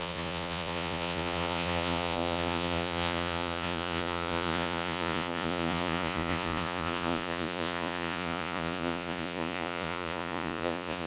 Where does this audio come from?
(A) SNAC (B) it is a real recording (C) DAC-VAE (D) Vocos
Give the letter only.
D